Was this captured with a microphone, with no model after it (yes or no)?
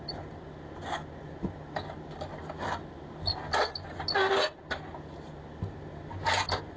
yes